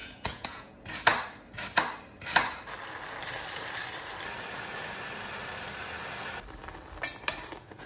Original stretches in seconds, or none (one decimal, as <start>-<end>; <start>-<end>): 0.7-7.9